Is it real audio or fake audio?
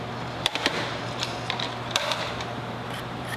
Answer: fake